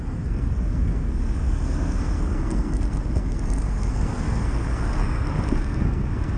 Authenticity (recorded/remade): remade